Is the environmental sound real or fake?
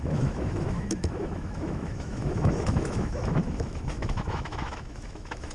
fake